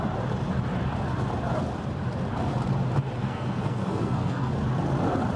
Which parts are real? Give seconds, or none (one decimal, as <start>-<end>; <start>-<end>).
0.0-3.2; 4.5-5.4